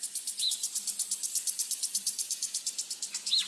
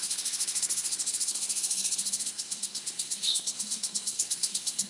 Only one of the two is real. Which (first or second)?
first